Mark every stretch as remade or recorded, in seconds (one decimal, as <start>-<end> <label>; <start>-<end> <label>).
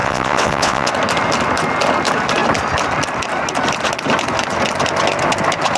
0.0-0.9 remade; 0.9-5.8 recorded